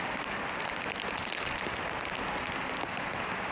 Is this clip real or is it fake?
real